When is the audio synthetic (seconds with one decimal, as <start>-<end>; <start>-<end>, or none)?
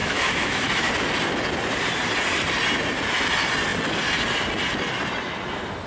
0.0-0.9